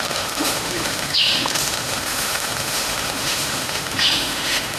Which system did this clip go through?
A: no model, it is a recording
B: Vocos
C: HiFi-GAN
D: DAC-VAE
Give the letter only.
D